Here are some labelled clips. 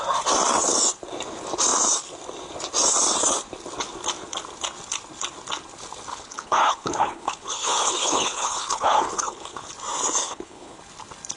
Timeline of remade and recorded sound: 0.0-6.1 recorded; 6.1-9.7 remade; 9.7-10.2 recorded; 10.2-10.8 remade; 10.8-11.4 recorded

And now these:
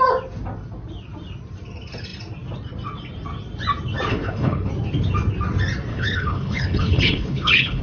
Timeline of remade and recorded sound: 0.0-4.1 recorded; 4.1-4.7 remade; 4.7-5.9 recorded; 5.9-7.8 remade

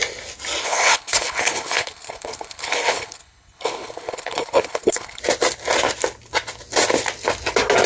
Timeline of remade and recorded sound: 0.0-0.6 recorded; 0.6-5.2 remade; 5.2-7.9 recorded

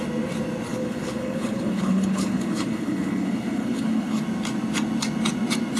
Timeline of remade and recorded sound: 0.0-0.7 recorded; 0.7-4.2 remade; 4.2-5.8 recorded

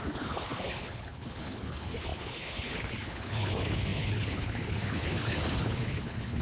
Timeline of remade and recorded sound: 0.0-6.4 remade

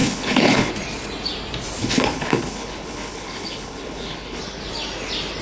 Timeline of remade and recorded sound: 0.0-0.7 remade; 0.7-1.8 recorded; 1.8-4.4 remade; 4.4-5.4 recorded